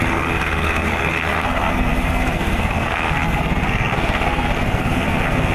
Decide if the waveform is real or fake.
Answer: fake